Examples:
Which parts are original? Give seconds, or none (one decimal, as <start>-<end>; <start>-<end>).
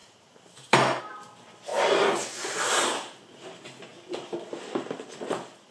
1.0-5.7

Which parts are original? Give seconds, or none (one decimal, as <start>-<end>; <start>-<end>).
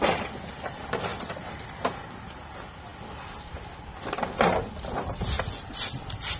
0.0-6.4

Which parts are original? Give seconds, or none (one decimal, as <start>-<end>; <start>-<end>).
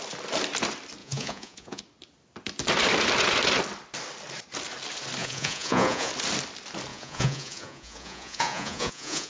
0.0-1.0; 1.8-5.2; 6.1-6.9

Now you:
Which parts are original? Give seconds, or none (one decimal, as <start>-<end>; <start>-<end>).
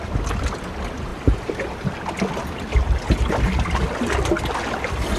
0.0-5.2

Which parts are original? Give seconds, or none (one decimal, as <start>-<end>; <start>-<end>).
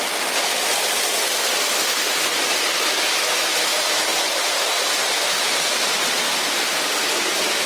0.0-7.7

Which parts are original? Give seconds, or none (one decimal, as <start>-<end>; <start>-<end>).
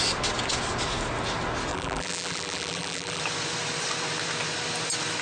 0.0-1.7; 3.2-5.2